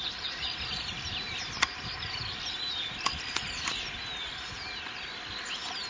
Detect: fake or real real